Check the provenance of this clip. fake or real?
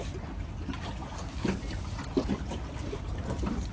real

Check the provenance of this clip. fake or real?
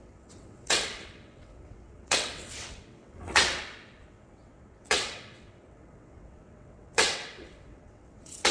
fake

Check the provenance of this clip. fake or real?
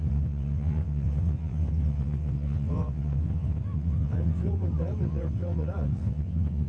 fake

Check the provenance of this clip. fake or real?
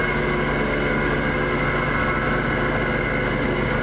real